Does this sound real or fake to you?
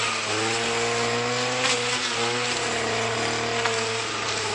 real